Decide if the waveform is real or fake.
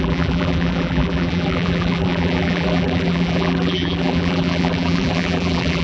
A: fake